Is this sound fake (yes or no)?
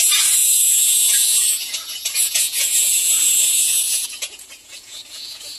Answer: yes